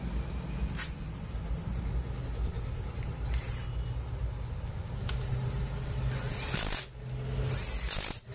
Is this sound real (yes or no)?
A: yes